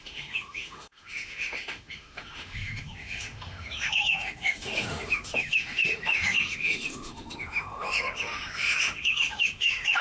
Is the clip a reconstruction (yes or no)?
yes